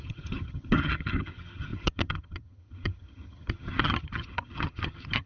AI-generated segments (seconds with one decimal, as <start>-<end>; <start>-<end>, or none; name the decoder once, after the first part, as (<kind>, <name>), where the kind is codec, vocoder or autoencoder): 0.0-5.3 (vocoder, HiFi-GAN)